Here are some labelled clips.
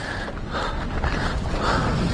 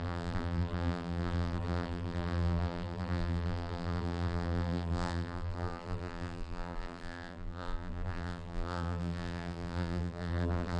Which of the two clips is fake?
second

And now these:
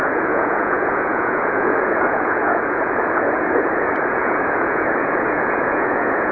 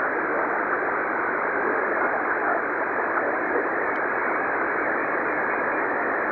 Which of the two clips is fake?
first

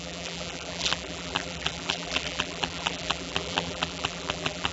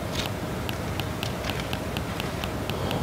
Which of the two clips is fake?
first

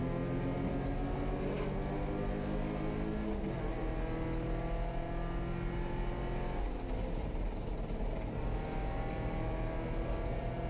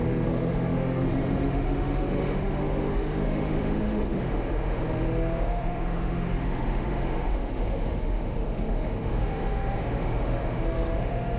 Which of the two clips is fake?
second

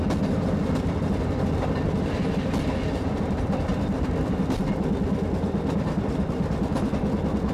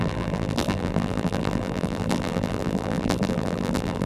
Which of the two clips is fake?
second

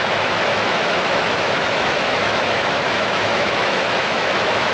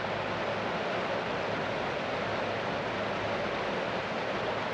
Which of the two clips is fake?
first